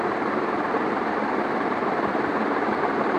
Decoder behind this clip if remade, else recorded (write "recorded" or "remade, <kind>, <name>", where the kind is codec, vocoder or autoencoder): remade, vocoder, BigVGAN v2